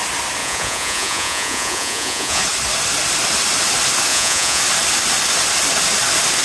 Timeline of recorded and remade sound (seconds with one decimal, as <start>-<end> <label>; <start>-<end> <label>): 0.0-0.4 recorded; 0.4-2.4 remade; 2.4-4.1 recorded; 4.1-4.6 remade; 4.6-6.4 recorded

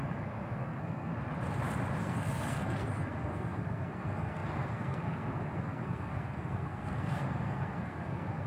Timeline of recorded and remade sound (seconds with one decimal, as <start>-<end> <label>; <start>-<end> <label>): 0.0-1.1 remade; 1.1-2.0 recorded; 2.0-8.5 remade

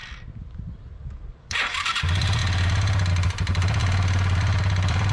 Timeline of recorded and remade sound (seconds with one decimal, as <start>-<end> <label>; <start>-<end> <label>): 0.0-1.1 recorded; 1.1-2.4 remade; 2.4-3.1 recorded; 3.1-3.8 remade; 3.8-4.6 recorded; 4.6-5.1 remade

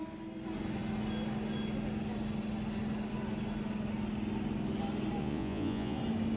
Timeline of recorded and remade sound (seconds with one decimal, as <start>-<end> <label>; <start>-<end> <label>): 0.0-5.2 recorded; 5.2-6.0 remade; 6.0-6.4 recorded

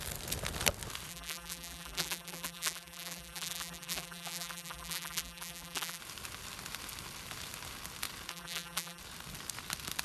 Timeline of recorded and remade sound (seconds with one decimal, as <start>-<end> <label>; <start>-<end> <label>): 0.0-1.1 recorded; 1.1-6.0 remade; 6.0-8.3 recorded; 8.3-9.0 remade; 9.0-10.0 recorded